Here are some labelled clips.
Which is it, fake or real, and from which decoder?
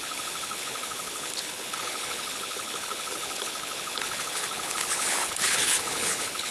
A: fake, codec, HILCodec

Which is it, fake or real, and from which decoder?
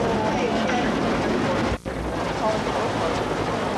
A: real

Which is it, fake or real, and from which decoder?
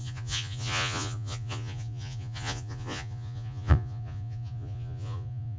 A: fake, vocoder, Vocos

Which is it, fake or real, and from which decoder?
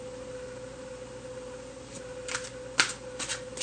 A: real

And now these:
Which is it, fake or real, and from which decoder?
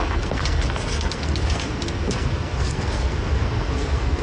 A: fake, codec, SNAC